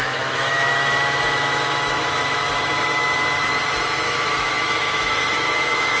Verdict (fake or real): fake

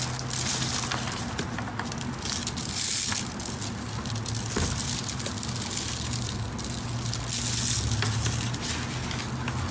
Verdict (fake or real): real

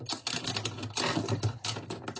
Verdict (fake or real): real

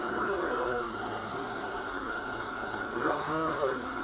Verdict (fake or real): fake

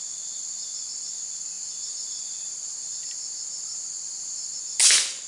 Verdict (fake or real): real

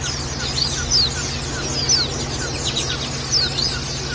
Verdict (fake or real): real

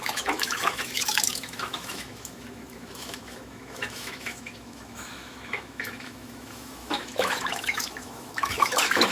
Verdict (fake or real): fake